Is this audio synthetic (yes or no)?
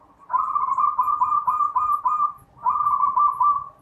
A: no